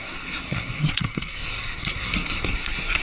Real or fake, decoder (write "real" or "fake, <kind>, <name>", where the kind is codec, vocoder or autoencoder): fake, codec, SNAC